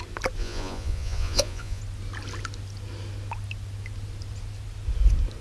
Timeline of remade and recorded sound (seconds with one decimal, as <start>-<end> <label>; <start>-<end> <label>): 0.0-0.4 recorded; 0.4-1.8 remade; 1.8-5.4 recorded